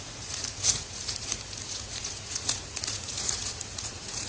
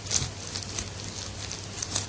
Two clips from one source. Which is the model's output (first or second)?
first